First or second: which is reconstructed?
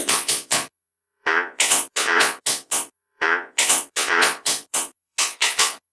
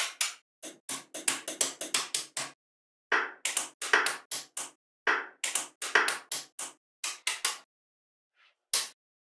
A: first